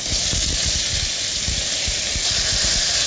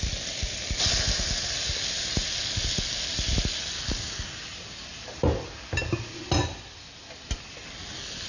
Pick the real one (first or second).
second